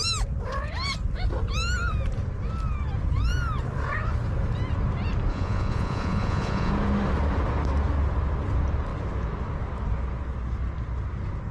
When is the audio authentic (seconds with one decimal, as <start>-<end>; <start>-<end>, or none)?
0.0-5.3; 6.7-11.5